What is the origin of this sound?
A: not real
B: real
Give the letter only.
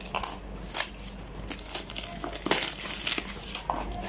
B